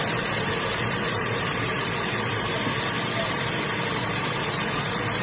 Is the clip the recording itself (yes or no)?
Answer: no